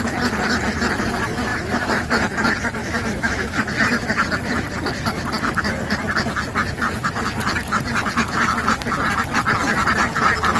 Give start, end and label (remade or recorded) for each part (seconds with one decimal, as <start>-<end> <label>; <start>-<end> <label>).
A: 0.0-1.5 recorded; 1.5-2.1 remade; 2.1-2.8 recorded; 2.8-3.6 remade; 3.6-10.6 recorded